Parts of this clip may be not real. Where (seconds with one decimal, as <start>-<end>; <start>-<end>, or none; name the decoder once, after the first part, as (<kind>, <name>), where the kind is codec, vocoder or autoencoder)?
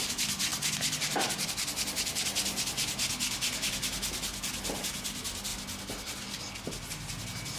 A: none